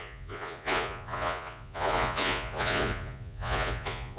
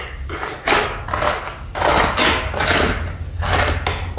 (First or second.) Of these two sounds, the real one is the second